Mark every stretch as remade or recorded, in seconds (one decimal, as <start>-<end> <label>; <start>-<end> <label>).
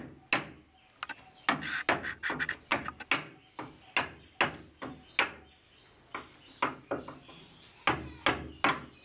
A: 0.0-9.0 recorded